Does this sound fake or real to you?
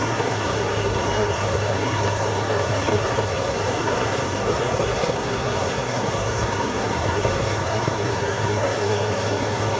fake